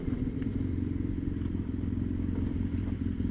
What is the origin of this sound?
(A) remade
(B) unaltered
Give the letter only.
B